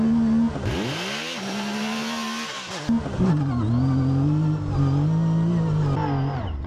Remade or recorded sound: recorded